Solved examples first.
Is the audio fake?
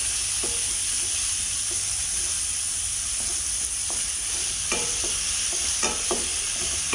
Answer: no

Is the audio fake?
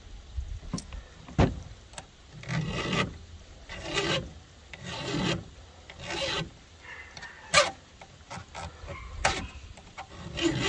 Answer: no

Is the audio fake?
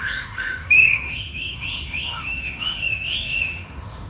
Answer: yes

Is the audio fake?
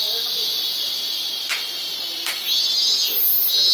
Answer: no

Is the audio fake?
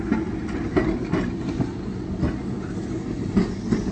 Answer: no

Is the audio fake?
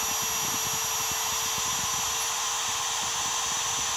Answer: no